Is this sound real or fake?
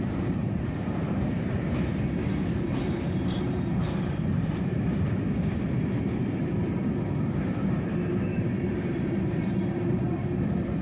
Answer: fake